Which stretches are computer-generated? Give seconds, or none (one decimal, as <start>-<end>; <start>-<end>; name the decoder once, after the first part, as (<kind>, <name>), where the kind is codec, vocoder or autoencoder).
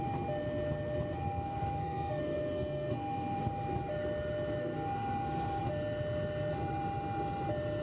1.2-3.4 (codec, SNAC); 4.6-5.6